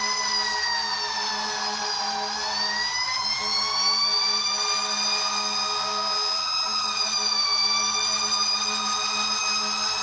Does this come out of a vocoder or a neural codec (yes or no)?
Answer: no